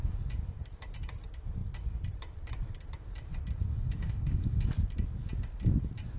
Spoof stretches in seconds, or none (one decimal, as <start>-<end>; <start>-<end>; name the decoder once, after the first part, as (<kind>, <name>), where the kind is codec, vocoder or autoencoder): 3.7-4.6 (autoencoder, DAC-VAE)